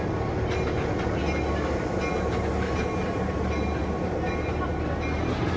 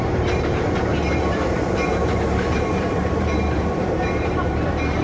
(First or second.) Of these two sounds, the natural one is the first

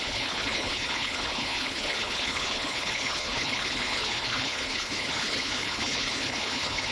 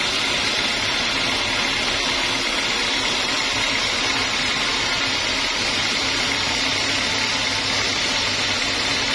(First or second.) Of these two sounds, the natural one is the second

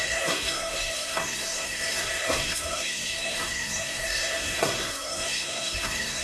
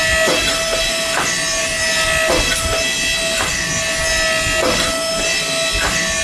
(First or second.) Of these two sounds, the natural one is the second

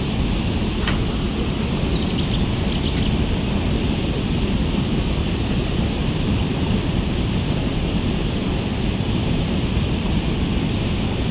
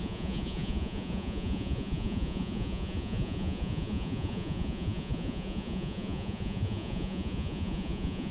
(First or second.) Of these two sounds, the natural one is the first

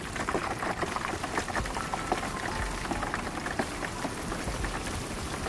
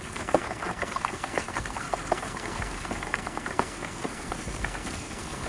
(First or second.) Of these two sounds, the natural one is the first